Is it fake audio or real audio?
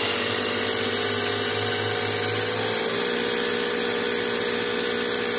real